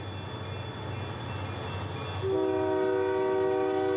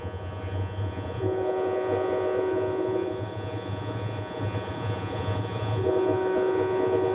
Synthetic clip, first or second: second